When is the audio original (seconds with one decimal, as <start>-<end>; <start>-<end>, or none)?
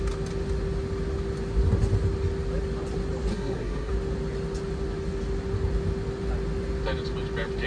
0.0-3.3; 3.9-7.7